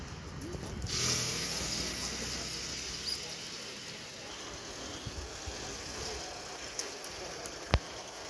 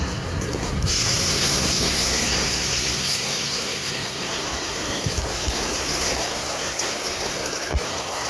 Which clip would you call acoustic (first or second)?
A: first